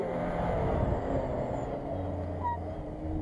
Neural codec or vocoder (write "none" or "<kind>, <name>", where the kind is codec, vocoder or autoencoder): none